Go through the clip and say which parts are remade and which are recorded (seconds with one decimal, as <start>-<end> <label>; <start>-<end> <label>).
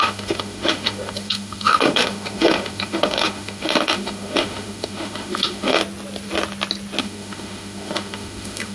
0.0-5.8 remade; 5.8-7.0 recorded; 7.0-8.7 remade